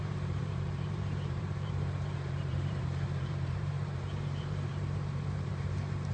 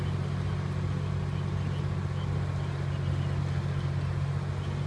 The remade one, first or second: first